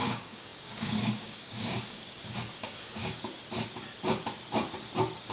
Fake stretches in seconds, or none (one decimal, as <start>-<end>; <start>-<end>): 0.0-3.0